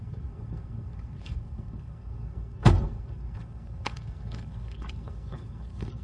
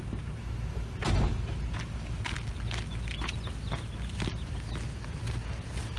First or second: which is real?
second